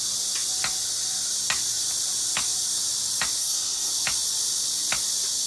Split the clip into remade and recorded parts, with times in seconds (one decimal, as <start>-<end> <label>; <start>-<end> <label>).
0.0-3.4 recorded; 3.4-3.9 remade; 3.9-5.5 recorded